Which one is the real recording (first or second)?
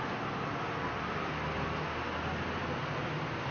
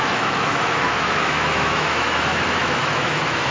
first